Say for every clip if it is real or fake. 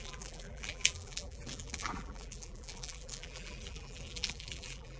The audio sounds fake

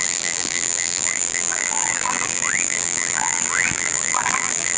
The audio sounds fake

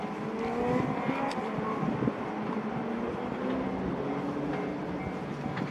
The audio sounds real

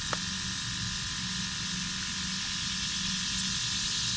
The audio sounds real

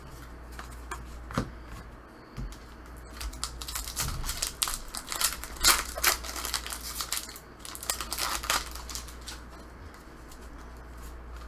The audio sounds real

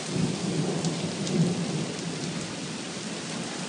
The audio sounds fake